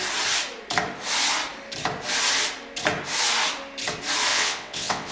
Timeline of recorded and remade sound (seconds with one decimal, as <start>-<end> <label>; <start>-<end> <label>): 0.0-4.3 recorded; 4.3-5.1 remade